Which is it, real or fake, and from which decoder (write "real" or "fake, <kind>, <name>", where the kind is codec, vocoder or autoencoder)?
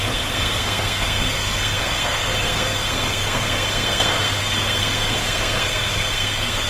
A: fake, codec, SNAC